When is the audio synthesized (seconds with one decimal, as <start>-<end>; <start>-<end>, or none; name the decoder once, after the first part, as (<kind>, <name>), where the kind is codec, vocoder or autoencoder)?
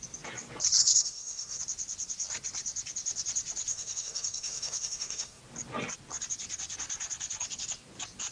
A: 0.8-1.6 (codec, SNAC); 3.7-5.4